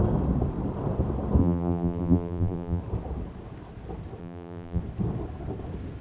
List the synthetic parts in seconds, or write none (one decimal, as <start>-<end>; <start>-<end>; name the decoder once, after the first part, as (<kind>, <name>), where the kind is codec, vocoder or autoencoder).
1.4-2.8 (vocoder, BigVGAN v2); 4.2-4.8